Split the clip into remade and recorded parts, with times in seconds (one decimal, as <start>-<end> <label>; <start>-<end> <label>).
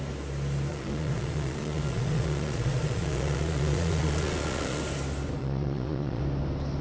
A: 0.0-0.7 recorded; 0.7-4.8 remade; 4.8-5.4 recorded; 5.4-6.2 remade; 6.2-6.8 recorded